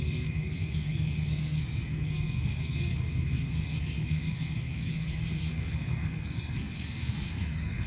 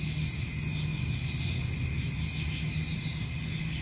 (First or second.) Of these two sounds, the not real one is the first